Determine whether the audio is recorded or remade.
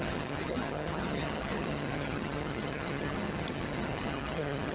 remade